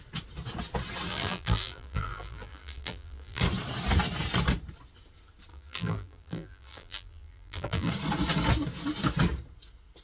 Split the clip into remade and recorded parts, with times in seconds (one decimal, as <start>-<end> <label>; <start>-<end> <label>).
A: 0.0-1.1 recorded; 1.1-3.4 remade; 3.4-5.5 recorded; 5.5-7.9 remade; 7.9-10.0 recorded